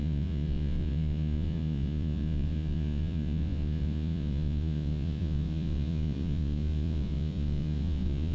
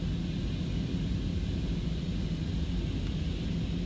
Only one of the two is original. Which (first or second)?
second